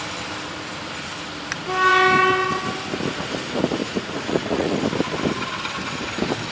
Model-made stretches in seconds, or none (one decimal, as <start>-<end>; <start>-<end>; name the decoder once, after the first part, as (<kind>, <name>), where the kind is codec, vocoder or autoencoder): 3.8-4.8 (vocoder, Vocos)